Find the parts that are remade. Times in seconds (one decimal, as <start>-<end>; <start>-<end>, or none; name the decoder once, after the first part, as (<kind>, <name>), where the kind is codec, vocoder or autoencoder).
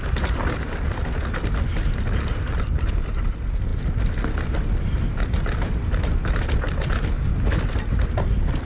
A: none